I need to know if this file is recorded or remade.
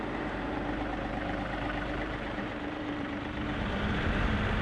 remade